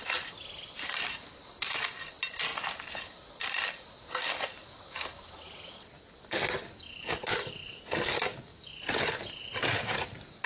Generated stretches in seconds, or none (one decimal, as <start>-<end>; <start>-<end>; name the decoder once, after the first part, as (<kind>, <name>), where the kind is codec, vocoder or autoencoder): none

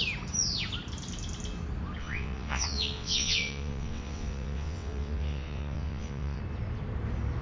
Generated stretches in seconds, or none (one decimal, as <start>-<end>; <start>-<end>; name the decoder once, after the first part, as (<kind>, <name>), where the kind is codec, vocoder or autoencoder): 2.0-6.4 (vocoder, WaveNeXt)